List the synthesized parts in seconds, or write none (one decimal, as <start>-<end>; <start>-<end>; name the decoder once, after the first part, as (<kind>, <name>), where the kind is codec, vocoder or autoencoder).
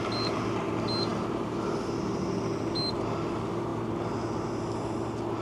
none